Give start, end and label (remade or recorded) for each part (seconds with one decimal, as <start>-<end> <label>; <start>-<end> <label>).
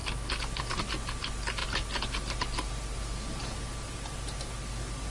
0.0-5.1 recorded